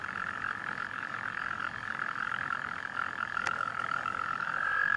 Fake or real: fake